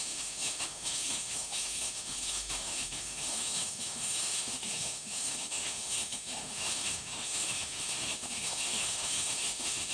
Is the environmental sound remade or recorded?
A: remade